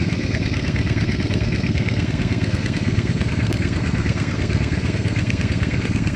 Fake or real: fake